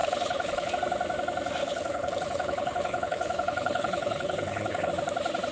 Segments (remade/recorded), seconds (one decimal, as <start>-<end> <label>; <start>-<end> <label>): 0.0-0.7 remade; 0.7-1.6 recorded; 1.6-4.9 remade; 4.9-5.5 recorded